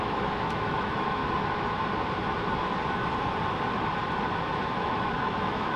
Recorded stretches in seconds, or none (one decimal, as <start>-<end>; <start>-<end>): 1.2-4.7